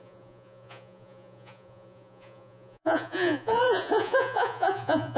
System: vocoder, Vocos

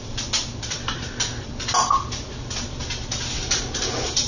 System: none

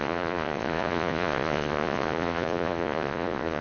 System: vocoder, Vocos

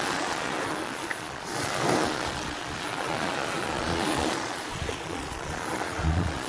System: vocoder, Vocos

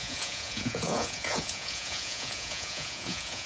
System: vocoder, Vocos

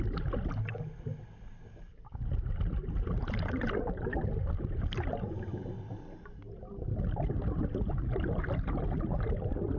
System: none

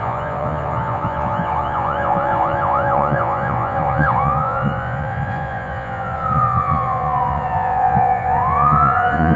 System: vocoder, Vocos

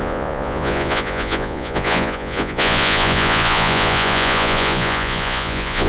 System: vocoder, Vocos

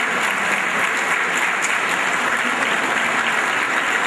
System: none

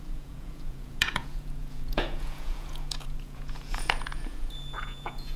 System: vocoder, Vocos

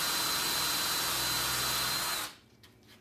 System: none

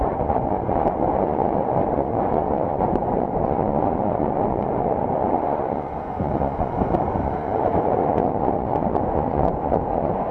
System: vocoder, Vocos